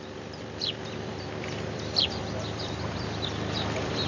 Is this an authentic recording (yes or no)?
no